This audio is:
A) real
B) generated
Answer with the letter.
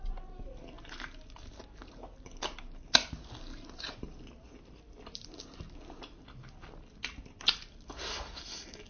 A